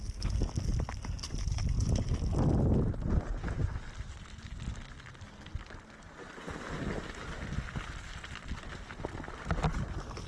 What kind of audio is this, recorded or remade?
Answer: recorded